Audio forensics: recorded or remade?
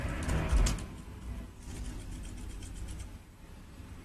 recorded